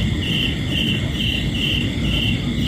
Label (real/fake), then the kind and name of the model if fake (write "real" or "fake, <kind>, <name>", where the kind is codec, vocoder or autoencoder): real